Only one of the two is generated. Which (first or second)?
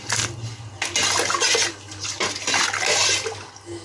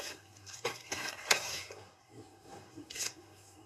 second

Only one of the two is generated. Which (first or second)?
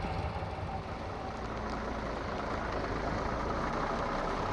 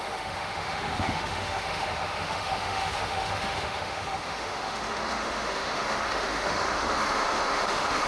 second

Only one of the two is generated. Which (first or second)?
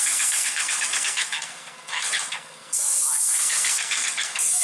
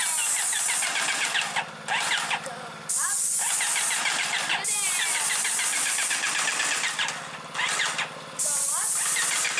first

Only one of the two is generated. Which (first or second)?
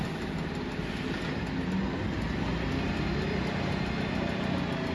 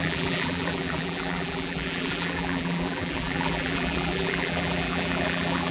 second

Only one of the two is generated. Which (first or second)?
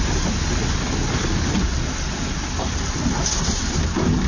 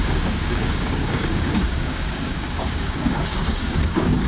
second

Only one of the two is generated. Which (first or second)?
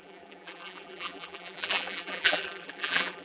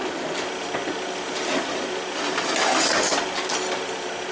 first